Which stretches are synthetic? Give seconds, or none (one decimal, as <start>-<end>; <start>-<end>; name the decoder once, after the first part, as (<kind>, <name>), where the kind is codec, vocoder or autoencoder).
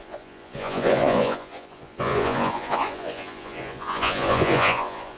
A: 0.0-5.2 (vocoder, Vocos)